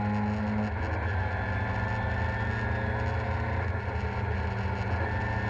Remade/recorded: recorded